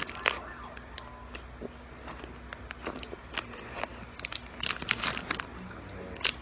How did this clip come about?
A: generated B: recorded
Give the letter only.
B